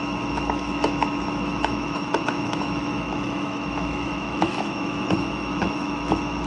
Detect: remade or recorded remade